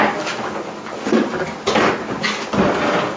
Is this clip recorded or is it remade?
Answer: recorded